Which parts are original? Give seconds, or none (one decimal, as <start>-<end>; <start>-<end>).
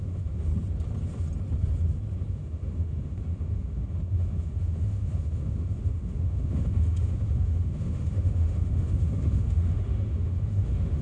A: 0.5-2.3